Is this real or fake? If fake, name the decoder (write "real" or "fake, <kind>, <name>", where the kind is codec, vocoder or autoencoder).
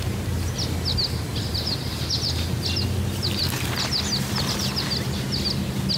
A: real